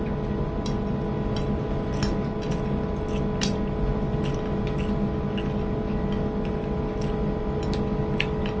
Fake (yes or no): no